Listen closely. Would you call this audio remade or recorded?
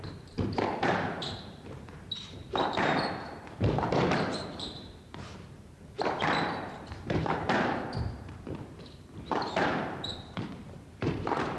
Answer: remade